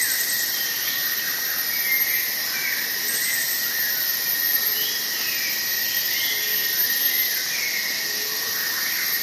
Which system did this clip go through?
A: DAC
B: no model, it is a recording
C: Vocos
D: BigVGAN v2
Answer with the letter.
B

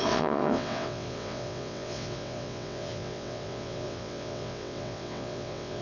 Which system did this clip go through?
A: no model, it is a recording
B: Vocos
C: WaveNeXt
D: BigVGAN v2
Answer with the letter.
C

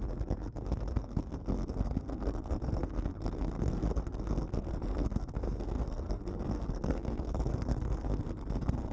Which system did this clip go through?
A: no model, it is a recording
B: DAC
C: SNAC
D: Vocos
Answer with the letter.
C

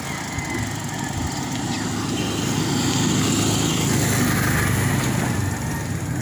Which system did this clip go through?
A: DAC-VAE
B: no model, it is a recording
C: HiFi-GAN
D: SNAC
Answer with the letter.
B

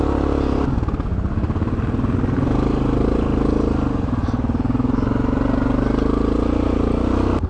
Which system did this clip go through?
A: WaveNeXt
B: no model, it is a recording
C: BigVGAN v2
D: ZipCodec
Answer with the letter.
B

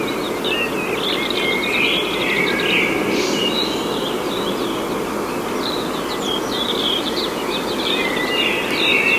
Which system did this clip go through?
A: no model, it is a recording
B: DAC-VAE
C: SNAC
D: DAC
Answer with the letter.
A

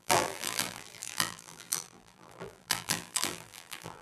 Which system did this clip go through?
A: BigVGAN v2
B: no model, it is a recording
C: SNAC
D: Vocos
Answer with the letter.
A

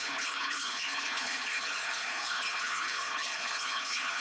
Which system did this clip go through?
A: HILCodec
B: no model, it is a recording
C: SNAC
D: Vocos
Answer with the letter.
A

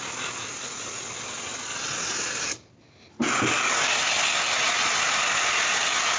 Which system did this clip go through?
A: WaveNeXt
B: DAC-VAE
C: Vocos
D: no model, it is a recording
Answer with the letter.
D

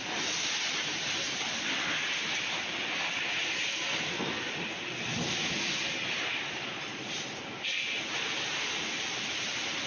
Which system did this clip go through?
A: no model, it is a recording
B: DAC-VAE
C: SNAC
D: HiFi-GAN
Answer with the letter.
A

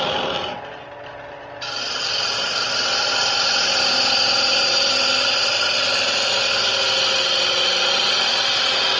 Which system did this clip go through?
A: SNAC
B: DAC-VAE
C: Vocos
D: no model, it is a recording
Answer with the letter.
D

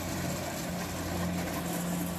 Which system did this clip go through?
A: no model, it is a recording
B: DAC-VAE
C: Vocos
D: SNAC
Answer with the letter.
A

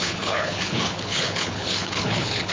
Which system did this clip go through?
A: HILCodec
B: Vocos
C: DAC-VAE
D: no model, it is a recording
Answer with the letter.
A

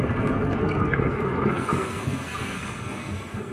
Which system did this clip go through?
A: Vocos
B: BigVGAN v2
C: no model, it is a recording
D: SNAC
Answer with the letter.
D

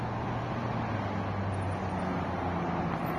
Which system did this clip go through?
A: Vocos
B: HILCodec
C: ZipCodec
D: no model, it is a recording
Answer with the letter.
D